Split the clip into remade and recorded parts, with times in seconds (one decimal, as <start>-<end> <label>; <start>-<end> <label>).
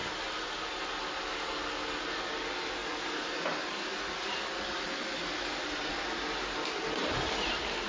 0.0-7.9 recorded